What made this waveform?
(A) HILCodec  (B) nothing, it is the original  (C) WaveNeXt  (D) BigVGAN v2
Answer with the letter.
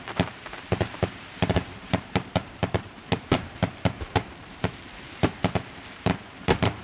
D